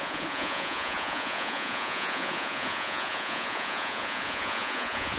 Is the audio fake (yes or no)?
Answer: yes